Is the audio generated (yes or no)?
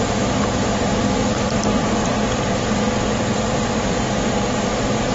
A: yes